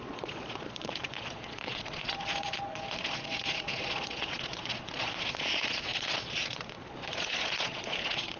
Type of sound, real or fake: fake